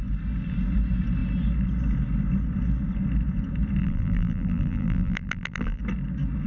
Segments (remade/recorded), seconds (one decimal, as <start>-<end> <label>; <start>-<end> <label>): 0.0-3.8 recorded; 3.8-5.8 remade; 5.8-6.5 recorded